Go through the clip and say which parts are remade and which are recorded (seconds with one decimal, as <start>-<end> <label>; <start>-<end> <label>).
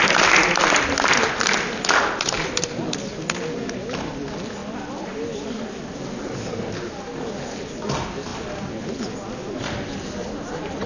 0.0-10.9 recorded